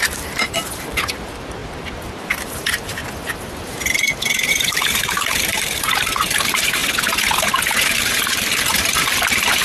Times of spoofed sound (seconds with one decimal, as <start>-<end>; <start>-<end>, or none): 0.0-1.6; 2.2-3.0; 4.5-6.8; 8.0-9.6